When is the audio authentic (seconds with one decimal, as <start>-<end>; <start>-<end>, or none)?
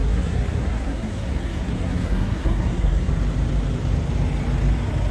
3.1-5.1